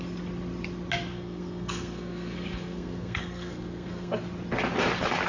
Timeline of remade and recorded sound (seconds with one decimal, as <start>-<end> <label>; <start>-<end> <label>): 0.0-1.1 recorded; 1.1-4.2 remade; 4.2-5.3 recorded

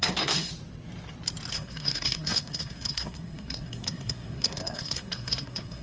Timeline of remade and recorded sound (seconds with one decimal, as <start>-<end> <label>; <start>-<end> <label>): 0.0-0.5 remade; 0.5-1.5 recorded; 1.5-5.8 remade

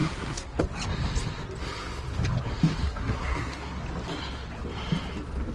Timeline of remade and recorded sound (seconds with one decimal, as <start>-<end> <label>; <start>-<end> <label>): 0.0-0.6 remade; 0.6-2.8 recorded; 2.8-3.8 remade; 3.8-5.5 recorded

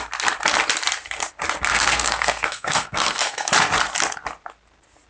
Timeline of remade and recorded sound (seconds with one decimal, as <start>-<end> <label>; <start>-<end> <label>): 0.0-1.7 recorded; 1.7-3.5 remade; 3.5-5.1 recorded

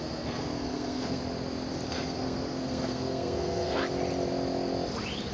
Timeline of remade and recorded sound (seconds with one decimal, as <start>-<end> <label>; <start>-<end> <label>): 0.0-1.2 remade; 1.2-1.9 recorded; 1.9-3.8 remade; 3.8-5.3 recorded